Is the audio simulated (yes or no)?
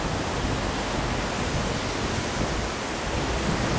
no